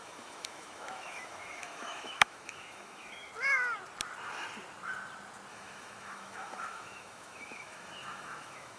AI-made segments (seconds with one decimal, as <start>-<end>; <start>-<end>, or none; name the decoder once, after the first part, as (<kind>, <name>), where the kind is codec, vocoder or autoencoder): 0.0-3.3 (autoencoder, DAC-VAE); 5.5-8.8